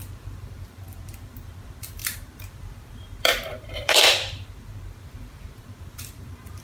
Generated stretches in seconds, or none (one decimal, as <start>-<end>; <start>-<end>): 0.0-6.6